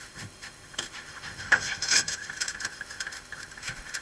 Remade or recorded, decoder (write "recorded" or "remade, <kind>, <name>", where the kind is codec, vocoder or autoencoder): remade, autoencoder, DAC-VAE